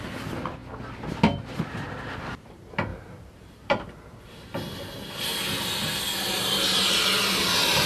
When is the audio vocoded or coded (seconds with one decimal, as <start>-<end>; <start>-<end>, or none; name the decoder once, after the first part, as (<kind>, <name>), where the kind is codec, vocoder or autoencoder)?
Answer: 2.9-4.2 (vocoder, BigVGAN v2)